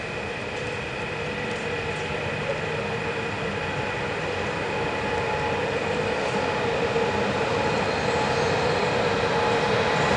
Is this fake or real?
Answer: real